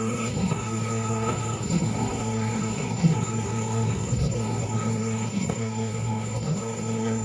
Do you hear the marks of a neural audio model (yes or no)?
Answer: yes